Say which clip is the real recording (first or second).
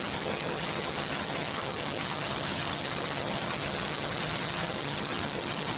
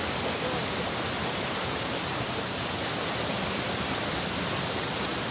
second